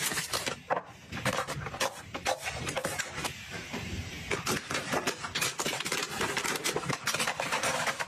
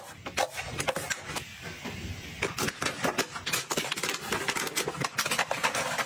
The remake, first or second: first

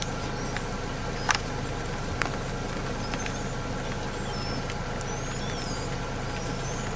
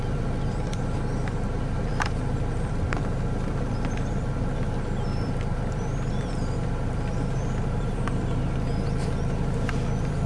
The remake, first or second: second